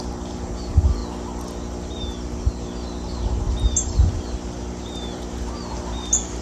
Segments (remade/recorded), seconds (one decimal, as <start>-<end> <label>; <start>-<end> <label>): 0.0-6.4 recorded